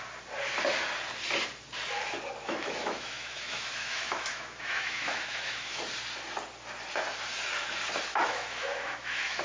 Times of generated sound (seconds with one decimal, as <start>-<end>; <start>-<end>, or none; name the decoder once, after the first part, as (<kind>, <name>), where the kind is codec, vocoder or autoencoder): 2.4-5.8 (autoencoder, DAC-VAE); 8.1-9.4